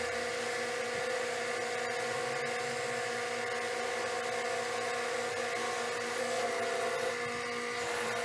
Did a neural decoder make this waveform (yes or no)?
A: no